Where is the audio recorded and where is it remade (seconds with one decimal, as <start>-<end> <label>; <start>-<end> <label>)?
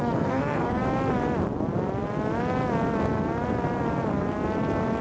0.0-0.8 remade; 0.8-5.0 recorded